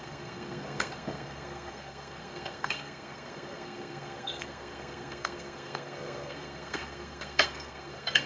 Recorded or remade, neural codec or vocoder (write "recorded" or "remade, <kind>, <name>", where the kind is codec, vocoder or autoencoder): remade, codec, SNAC